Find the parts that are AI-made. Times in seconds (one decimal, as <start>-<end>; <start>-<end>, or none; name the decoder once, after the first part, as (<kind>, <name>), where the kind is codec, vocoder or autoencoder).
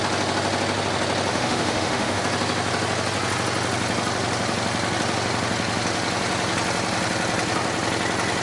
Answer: 1.3-2.2 (autoencoder, DAC-VAE)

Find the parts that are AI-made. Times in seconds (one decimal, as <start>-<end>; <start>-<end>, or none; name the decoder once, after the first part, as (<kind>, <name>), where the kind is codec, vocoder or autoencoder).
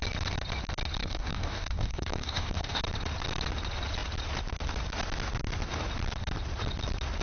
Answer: 1.0-2.8 (codec, DAC)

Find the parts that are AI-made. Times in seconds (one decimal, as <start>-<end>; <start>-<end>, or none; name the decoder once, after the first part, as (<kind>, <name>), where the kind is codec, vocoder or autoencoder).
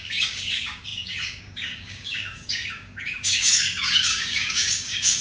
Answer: 0.0-5.2 (codec, DAC)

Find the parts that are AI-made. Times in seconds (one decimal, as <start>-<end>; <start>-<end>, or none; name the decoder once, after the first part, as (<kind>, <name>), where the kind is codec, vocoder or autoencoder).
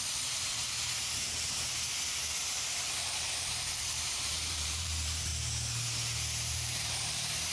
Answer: 0.0-0.5 (vocoder, BigVGAN v2); 2.5-5.3; 6.5-7.5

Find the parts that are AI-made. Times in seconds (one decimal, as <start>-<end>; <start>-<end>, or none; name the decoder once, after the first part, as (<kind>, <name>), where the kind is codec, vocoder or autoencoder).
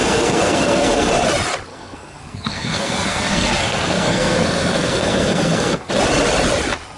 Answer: 0.0-1.1 (codec, SNAC); 1.7-5.9